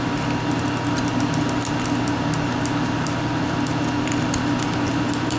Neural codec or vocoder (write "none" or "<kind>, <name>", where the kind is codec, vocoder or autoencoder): none